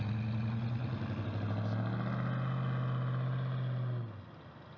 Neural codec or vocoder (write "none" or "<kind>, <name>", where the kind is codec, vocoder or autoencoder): none